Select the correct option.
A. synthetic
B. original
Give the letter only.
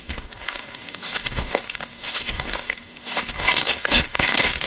A